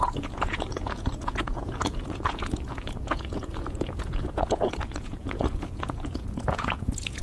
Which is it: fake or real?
fake